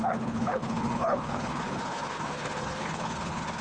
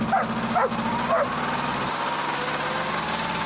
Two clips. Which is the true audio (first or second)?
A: second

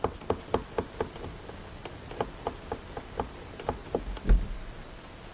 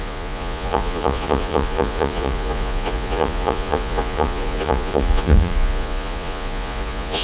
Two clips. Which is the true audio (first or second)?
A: first